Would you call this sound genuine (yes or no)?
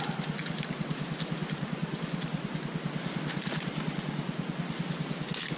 yes